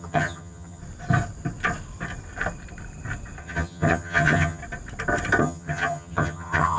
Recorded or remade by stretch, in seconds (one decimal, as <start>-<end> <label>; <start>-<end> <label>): 0.0-0.8 remade; 0.8-3.4 recorded; 3.4-4.6 remade; 4.6-5.4 recorded; 5.4-6.8 remade